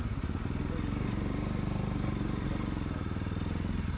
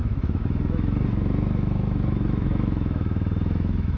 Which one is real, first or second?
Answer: first